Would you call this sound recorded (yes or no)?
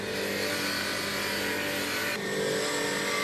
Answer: yes